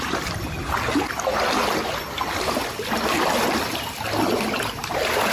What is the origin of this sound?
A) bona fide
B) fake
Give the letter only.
A